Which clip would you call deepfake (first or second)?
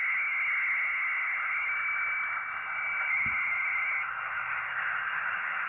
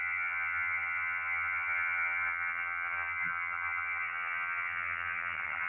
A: second